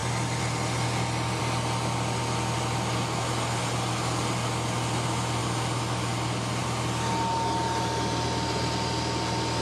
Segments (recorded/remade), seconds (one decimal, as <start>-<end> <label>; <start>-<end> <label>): 0.0-9.6 recorded